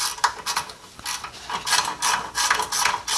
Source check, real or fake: real